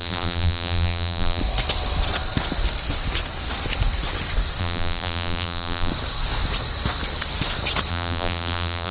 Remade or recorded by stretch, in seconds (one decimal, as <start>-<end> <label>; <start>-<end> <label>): 0.0-1.4 remade; 1.4-4.6 recorded; 4.6-5.9 remade; 5.9-7.9 recorded; 7.9-8.9 remade

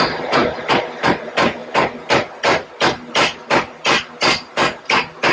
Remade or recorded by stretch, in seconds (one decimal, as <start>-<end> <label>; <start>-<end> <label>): 0.0-5.3 recorded

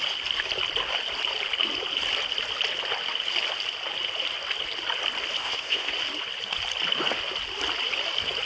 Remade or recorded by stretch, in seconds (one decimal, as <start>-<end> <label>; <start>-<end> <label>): 0.0-5.4 recorded; 5.4-5.9 remade; 5.9-8.5 recorded

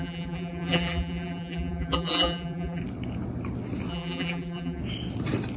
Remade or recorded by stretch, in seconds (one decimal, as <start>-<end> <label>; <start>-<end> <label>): 0.0-2.8 remade; 2.8-3.9 recorded; 3.9-4.8 remade; 4.8-5.6 recorded

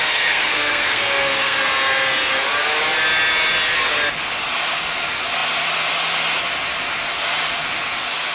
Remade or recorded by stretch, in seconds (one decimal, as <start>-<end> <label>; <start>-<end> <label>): 0.0-1.7 remade; 1.7-8.3 recorded

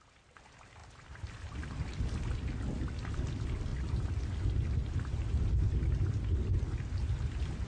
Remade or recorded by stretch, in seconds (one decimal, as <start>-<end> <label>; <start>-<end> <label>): 0.0-7.7 recorded